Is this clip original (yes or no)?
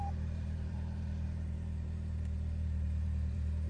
no